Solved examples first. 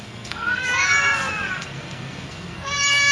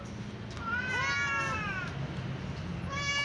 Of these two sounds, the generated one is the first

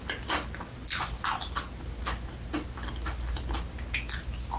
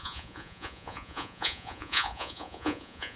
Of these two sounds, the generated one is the second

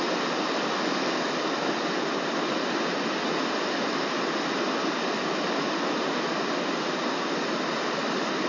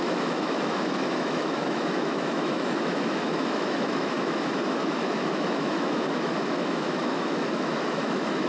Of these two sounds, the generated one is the second